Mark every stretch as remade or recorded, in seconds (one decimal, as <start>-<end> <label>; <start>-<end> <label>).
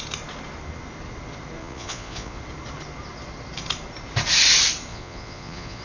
0.0-1.6 recorded; 1.6-2.4 remade; 2.4-4.9 recorded; 4.9-5.8 remade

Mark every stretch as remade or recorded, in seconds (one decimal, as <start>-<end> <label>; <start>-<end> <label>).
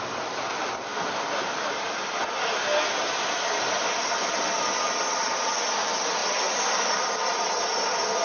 0.0-8.2 recorded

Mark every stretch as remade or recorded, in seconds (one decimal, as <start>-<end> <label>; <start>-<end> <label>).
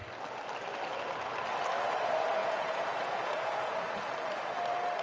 0.0-2.4 recorded; 2.4-3.8 remade; 3.8-5.0 recorded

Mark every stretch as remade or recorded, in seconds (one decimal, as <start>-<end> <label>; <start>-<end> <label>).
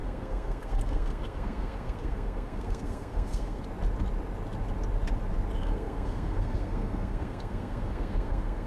0.0-3.6 remade; 3.6-5.6 recorded; 5.6-8.7 remade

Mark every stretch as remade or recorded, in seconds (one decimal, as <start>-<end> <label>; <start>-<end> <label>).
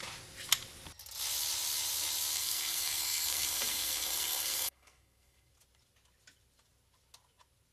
0.0-2.3 recorded; 2.3-5.5 remade; 5.5-7.7 recorded